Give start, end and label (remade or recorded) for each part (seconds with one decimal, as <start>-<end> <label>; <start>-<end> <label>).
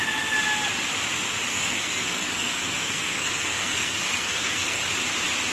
0.0-1.5 recorded; 1.5-4.8 remade; 4.8-5.5 recorded